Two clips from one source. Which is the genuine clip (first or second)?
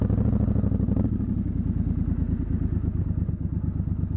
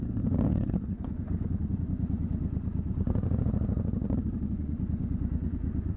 first